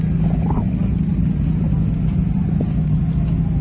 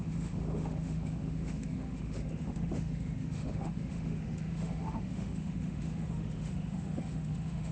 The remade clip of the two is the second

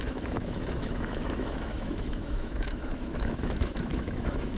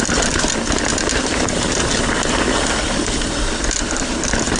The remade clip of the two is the first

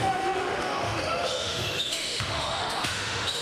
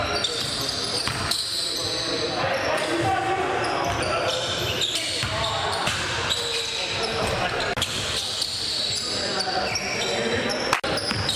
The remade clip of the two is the first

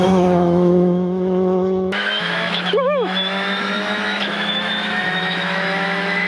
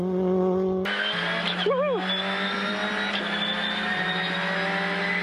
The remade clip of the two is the first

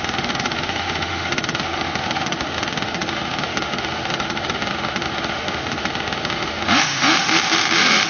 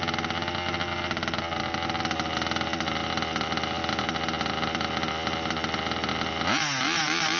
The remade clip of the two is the first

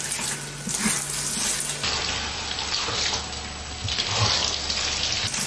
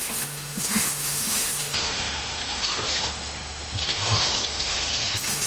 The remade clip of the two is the second